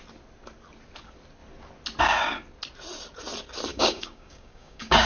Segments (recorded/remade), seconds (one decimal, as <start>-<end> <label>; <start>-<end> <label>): 0.0-3.7 recorded; 3.7-5.1 remade